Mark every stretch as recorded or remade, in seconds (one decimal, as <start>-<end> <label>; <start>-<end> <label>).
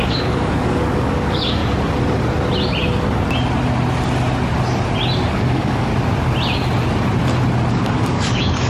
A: 0.0-1.6 remade; 1.6-5.3 recorded; 5.3-5.9 remade; 5.9-7.7 recorded; 7.7-8.7 remade